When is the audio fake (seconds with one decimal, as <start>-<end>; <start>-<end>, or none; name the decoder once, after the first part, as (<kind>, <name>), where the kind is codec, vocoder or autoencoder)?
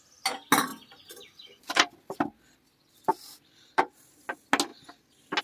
0.7-2.2 (vocoder, BigVGAN v2); 3.1-4.1